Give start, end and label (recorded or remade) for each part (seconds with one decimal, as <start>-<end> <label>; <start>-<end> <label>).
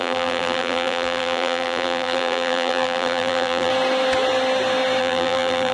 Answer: 0.0-3.7 remade; 3.7-5.0 recorded; 5.0-5.7 remade